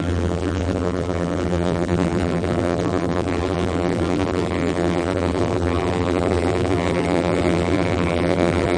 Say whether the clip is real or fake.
fake